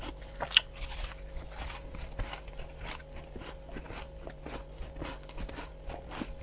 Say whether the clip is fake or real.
real